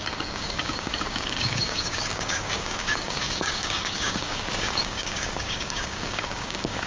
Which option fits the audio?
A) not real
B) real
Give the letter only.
A